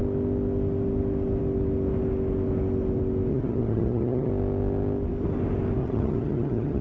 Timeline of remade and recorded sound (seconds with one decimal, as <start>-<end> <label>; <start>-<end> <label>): 0.0-3.3 recorded; 3.3-4.3 remade; 4.3-5.8 recorded; 5.8-6.8 remade